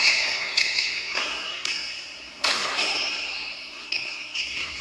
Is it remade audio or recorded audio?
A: remade